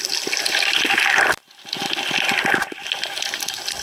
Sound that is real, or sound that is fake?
real